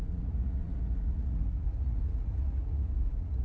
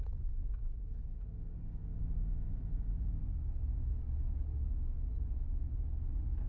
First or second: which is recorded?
second